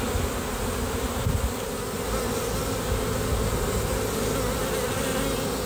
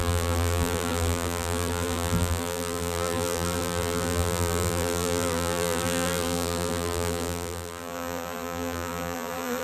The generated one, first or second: second